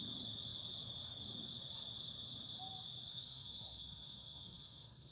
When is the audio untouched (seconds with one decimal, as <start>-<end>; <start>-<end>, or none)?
0.0-3.1